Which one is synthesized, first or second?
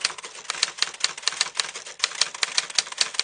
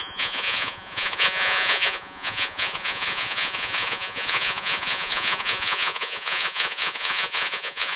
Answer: second